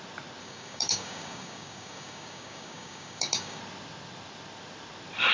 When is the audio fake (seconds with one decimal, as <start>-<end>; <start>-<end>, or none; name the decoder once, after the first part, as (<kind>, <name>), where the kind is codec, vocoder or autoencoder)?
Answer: 0.4-3.6 (codec, DAC)

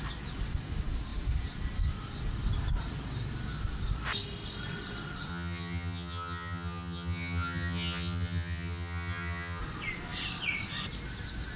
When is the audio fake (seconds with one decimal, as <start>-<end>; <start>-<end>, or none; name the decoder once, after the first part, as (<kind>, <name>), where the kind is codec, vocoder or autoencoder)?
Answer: 5.3-9.6 (vocoder, HiFi-GAN)

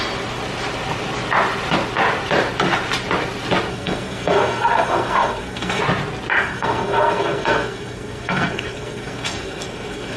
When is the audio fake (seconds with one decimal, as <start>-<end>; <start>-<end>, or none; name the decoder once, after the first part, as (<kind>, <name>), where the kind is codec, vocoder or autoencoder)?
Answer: 3.7-5.8 (codec, SNAC); 6.4-10.2

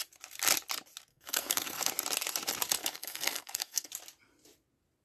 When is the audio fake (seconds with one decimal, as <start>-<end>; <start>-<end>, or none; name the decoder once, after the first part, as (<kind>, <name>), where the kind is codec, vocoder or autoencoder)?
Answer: 1.1-1.9 (codec, SNAC); 2.8-3.9

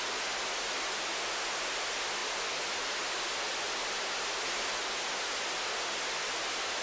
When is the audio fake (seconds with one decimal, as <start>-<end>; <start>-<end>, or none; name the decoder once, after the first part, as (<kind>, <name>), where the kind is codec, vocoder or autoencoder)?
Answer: none